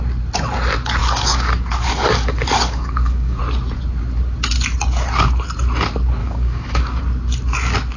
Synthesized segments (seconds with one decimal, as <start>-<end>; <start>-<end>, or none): 1.0-3.4; 6.2-7.0